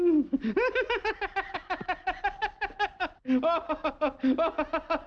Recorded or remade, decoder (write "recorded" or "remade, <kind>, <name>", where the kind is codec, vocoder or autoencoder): recorded